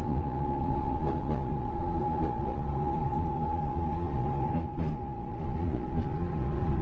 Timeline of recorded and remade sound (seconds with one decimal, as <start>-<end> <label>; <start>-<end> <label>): 0.0-6.8 remade

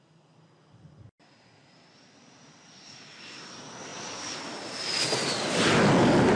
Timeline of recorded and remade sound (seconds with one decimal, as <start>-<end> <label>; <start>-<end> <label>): 0.0-6.4 recorded

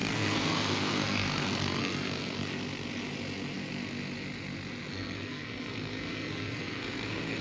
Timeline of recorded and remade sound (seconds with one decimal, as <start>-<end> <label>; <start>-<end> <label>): 0.0-2.4 remade; 2.4-4.9 recorded; 4.9-7.4 remade